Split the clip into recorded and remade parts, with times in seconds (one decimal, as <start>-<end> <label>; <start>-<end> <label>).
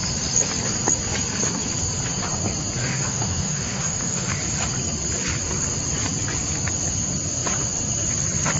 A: 0.0-2.8 recorded; 2.8-4.4 remade; 4.4-8.6 recorded